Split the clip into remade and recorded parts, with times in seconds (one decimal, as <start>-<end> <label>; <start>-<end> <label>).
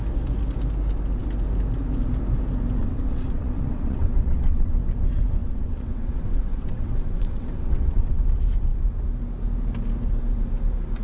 0.0-2.8 recorded; 2.8-4.7 remade; 4.7-5.4 recorded; 5.4-8.2 remade; 8.2-11.0 recorded